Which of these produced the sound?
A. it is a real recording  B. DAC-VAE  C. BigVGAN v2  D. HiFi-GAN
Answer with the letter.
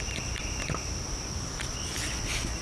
A